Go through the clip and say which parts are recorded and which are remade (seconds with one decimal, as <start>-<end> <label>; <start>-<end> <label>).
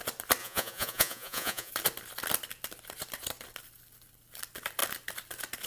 0.0-0.4 recorded; 0.4-1.7 remade; 1.7-5.7 recorded